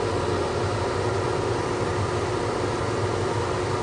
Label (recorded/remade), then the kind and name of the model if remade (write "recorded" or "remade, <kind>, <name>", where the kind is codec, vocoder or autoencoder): recorded